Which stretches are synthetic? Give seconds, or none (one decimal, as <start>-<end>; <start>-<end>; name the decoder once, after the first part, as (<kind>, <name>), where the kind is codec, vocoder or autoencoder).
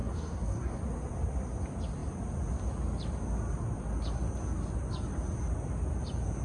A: 0.0-0.8 (codec, SNAC)